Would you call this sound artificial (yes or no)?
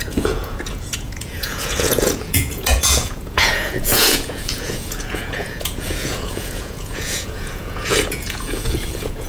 yes